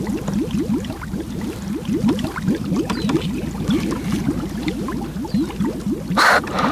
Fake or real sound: real